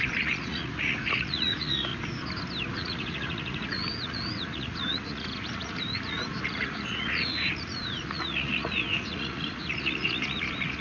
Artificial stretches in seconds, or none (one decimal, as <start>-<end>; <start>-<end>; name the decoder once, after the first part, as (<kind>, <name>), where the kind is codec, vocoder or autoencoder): 0.0-1.9 (vocoder, Vocos); 2.6-10.8